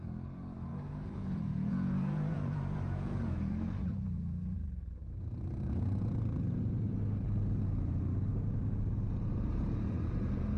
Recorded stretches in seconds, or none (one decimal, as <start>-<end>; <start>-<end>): 0.0-0.7; 3.5-10.6